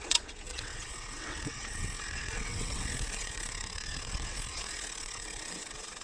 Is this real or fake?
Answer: fake